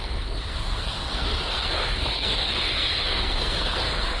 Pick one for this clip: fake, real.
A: fake